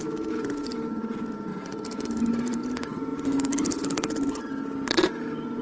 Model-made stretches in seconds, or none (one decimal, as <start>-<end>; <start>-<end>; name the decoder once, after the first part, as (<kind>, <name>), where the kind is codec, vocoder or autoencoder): 1.5-2.6 (vocoder, BigVGAN v2)